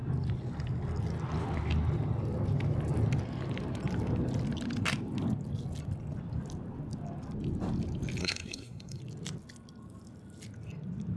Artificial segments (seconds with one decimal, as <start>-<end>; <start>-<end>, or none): 8.2-9.0